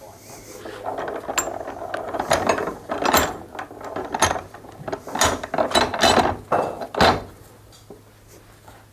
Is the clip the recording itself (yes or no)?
yes